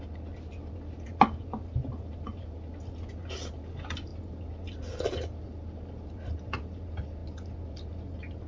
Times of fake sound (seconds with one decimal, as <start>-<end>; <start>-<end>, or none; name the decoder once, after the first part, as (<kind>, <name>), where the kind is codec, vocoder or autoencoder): none